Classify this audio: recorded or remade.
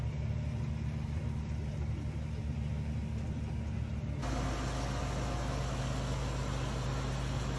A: recorded